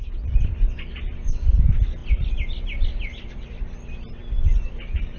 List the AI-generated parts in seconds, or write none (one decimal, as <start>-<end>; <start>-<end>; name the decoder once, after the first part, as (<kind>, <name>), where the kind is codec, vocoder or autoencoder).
none

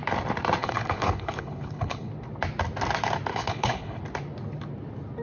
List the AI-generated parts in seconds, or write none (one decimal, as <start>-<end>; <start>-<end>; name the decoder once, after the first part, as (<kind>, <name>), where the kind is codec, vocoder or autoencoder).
0.6-2.1 (codec, HILCodec); 3.3-4.0

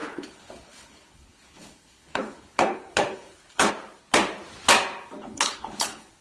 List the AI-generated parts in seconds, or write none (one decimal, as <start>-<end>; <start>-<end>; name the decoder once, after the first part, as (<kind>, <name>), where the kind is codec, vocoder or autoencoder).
0.0-3.7 (codec, HILCodec); 5.2-6.2

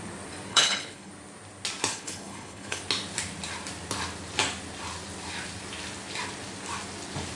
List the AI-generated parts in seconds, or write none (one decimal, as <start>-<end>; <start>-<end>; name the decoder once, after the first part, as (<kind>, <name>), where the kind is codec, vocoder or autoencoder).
0.5-1.1 (codec, HILCodec); 1.9-2.8

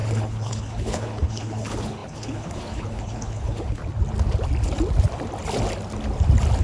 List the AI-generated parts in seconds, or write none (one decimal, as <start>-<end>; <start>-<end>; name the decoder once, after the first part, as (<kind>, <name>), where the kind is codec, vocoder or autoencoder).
0.0-3.8 (codec, HILCodec)

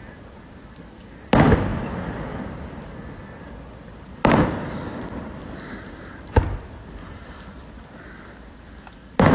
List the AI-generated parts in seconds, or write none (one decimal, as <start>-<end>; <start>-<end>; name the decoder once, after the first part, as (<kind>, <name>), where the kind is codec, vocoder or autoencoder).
none